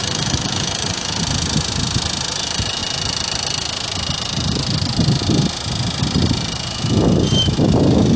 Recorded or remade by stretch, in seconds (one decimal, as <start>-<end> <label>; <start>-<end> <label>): 0.0-1.2 remade; 1.2-8.2 recorded